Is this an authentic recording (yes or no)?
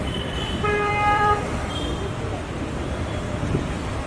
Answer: no